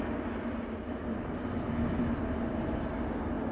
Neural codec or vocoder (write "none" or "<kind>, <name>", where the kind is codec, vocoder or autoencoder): none